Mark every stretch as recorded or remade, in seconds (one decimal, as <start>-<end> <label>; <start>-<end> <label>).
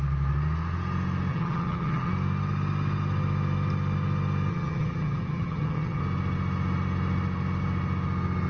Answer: 0.0-1.3 recorded; 1.3-2.1 remade; 2.1-4.5 recorded; 4.5-6.0 remade; 6.0-8.5 recorded